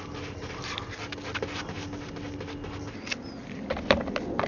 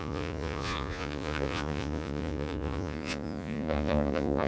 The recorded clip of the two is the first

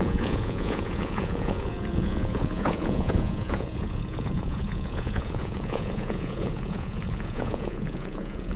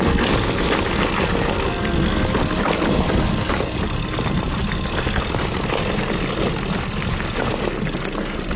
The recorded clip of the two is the second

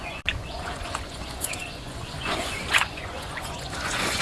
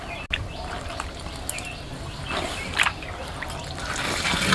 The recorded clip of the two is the second